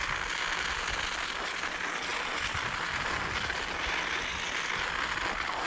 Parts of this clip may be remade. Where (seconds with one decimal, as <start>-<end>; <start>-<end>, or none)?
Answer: none